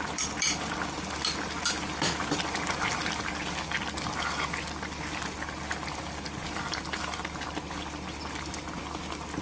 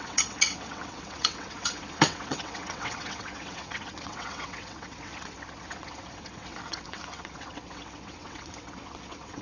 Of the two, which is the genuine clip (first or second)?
first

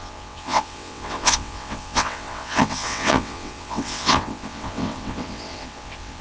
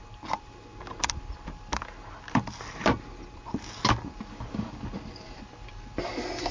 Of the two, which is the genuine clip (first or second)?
second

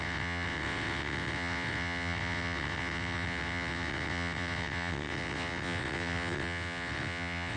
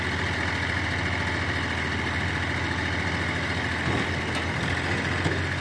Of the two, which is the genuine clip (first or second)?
second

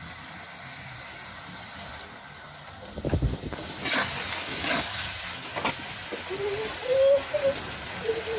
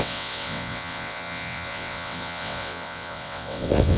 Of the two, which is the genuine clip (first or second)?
first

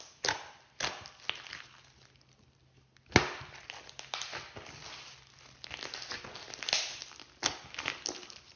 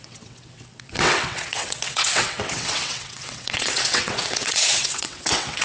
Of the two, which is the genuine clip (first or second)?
first